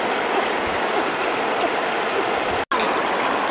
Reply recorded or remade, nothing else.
recorded